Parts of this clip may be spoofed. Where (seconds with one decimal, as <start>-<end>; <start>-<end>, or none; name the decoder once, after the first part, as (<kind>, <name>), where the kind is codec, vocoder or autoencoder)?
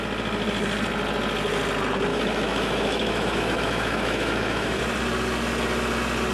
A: 2.1-4.8 (autoencoder, DAC-VAE)